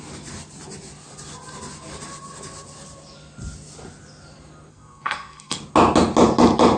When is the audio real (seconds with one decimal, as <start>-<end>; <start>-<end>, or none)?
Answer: 0.0-4.7; 5.6-6.8